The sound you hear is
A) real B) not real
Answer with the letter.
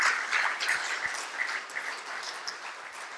A